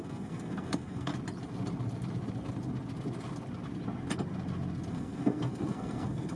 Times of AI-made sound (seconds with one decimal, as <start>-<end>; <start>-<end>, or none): 0.0-1.1; 4.9-6.4

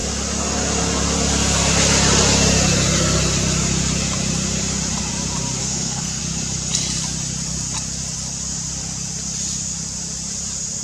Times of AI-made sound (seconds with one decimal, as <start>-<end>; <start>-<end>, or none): 5.6-6.2

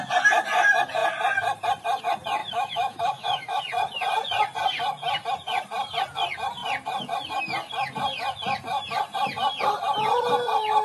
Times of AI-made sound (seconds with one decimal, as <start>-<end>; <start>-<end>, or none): 2.4-3.6

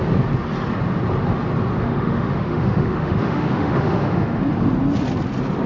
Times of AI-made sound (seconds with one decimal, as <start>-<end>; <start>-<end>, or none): 1.7-4.4

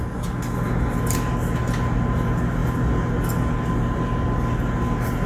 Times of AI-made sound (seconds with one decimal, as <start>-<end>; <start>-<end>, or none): none

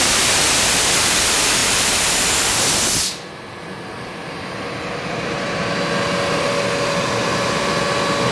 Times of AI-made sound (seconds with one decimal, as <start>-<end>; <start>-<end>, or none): 1.6-5.6

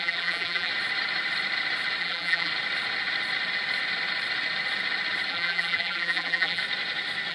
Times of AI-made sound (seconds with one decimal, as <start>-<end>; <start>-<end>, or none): 0.0-0.7; 2.0-2.5; 5.3-6.6

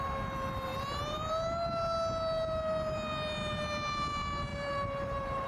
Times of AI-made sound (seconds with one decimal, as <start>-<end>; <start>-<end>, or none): 0.7-1.3; 4.5-5.5